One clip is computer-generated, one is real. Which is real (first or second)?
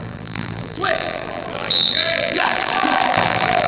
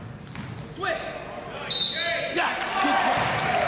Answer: second